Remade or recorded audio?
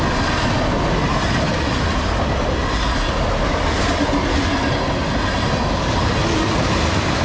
recorded